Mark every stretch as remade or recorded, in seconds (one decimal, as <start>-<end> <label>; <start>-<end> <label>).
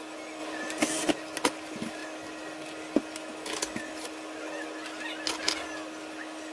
0.0-6.5 recorded